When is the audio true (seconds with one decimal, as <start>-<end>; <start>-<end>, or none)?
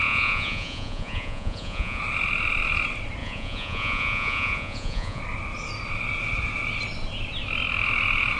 2.0-3.2; 5.2-8.4